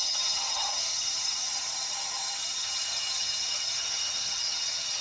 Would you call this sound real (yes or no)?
no